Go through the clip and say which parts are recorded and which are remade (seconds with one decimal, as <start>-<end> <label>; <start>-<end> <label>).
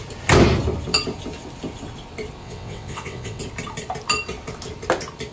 0.0-2.4 recorded; 2.4-3.4 remade; 3.4-5.3 recorded